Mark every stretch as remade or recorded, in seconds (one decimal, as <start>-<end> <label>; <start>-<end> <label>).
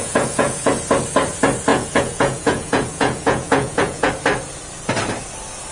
0.0-0.7 remade; 0.7-1.7 recorded; 1.7-4.1 remade; 4.1-5.7 recorded